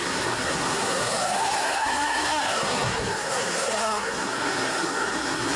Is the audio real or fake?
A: fake